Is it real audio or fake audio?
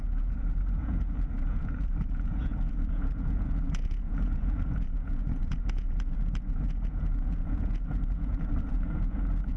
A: fake